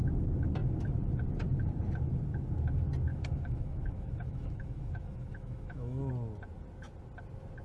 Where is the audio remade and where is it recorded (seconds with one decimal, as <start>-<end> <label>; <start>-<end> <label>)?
0.0-3.1 recorded; 3.1-6.1 remade; 6.1-7.6 recorded